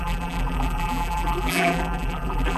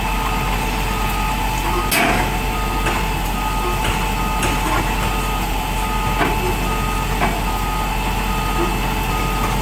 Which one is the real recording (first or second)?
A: second